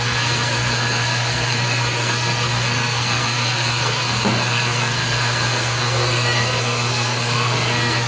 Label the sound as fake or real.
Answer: fake